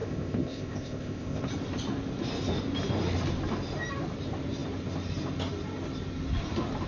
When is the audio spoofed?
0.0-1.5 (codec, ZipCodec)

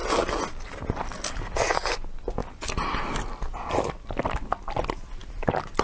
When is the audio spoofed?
none

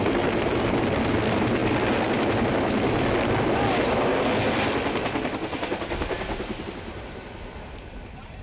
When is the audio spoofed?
none

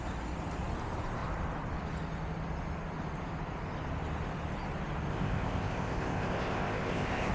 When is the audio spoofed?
5.1-7.3 (codec, ZipCodec)

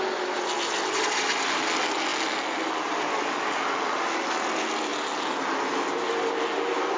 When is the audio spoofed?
none

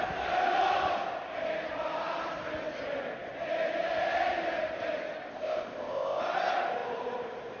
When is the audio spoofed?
5.3-6.2 (codec, ZipCodec)